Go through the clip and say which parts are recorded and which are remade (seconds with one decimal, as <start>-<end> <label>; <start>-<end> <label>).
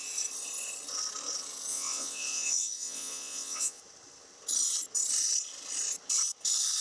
0.0-1.7 recorded; 1.7-3.8 remade; 3.8-6.8 recorded